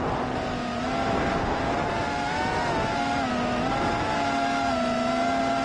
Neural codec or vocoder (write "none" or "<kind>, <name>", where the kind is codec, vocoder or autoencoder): none